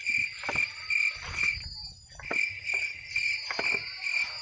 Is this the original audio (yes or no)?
yes